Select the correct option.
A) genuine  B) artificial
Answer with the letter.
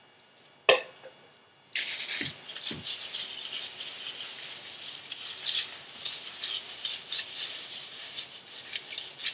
A